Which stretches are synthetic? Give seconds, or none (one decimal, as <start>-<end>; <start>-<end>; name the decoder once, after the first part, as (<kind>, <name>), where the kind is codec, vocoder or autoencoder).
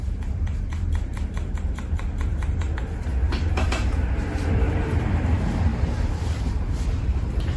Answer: 0.0-3.1 (vocoder, BigVGAN v2); 4.7-7.6